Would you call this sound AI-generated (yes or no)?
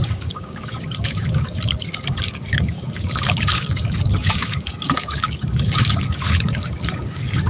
yes